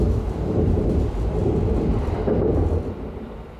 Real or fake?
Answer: fake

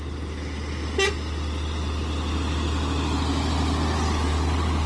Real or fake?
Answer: real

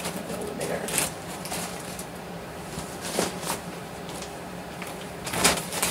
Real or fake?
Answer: fake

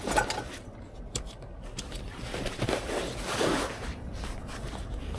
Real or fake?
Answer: real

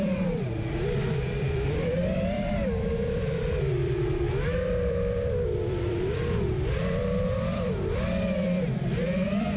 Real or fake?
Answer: fake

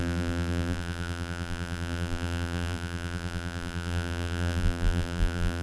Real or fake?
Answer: fake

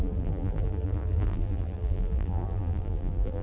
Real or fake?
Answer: fake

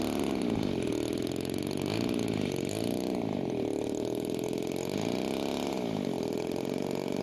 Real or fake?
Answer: real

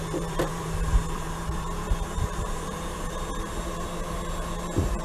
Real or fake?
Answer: fake